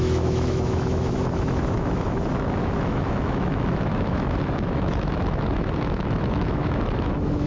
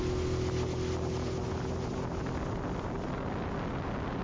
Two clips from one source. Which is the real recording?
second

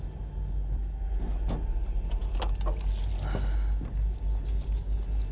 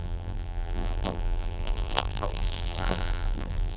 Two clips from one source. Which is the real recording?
first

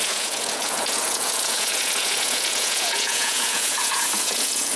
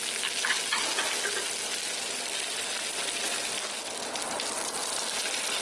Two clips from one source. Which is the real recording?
second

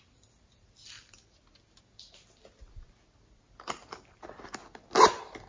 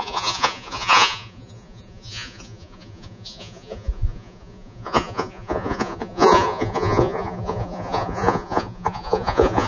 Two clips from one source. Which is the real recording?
first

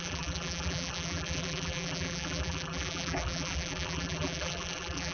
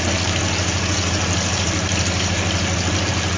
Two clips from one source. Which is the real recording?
second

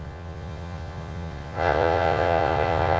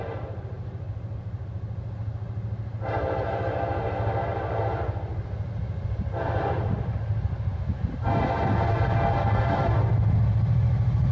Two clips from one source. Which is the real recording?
second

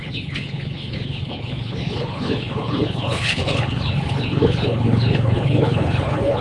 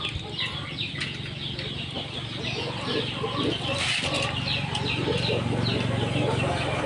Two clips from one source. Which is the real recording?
second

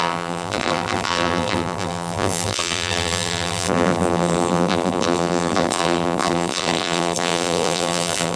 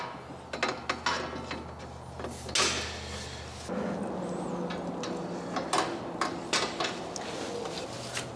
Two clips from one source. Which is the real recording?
second